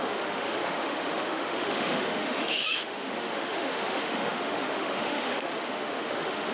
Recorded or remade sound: remade